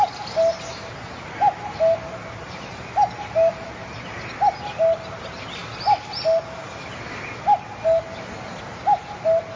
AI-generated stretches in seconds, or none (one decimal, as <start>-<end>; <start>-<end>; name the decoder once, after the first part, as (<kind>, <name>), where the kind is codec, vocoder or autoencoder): none